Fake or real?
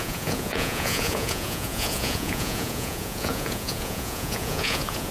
fake